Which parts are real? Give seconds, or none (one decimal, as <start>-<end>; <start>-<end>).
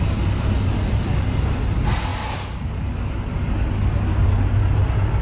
0.0-5.2